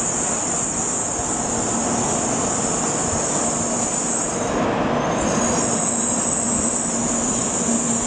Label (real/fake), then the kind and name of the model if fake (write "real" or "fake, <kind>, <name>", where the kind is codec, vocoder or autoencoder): real